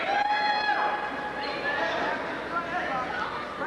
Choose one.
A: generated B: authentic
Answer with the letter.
B